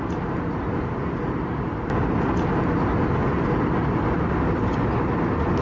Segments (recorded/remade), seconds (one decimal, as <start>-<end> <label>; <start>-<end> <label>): 0.0-5.6 recorded